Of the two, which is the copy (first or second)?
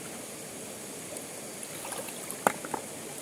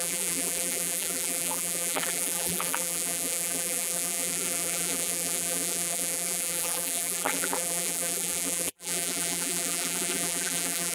second